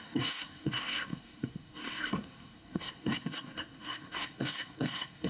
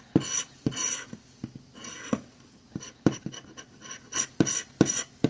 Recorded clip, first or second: second